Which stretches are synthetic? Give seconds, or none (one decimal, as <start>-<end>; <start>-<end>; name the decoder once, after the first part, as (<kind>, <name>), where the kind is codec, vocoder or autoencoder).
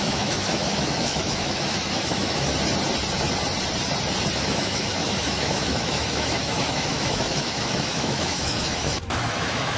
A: 0.0-2.5 (autoencoder, DAC-VAE); 4.4-9.8